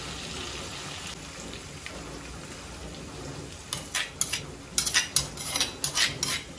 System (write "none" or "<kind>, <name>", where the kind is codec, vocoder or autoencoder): none